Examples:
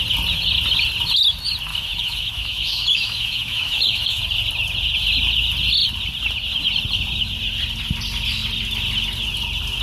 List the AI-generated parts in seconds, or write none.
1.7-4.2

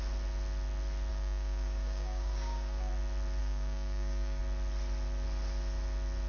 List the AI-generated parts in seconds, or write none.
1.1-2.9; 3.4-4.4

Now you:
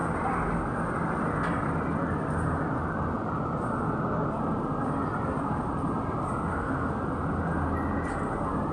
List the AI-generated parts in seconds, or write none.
6.5-7.0

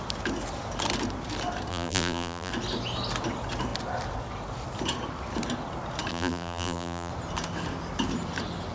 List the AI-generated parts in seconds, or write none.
1.7-2.5; 6.1-7.1

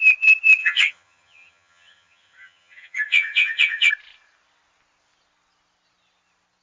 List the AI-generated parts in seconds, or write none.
0.6-3.9